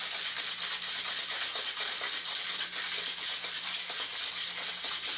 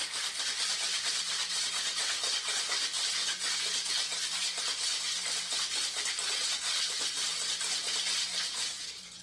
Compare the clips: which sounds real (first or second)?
first